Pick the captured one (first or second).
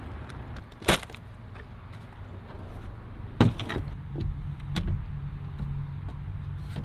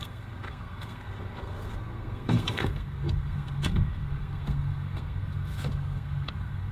first